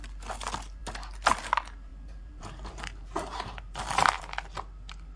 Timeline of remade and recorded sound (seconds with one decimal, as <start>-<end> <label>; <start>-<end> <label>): 0.0-1.9 recorded; 1.9-4.2 remade; 4.2-5.2 recorded